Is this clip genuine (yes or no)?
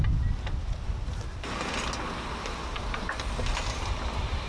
yes